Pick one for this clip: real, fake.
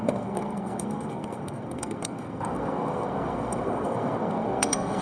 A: fake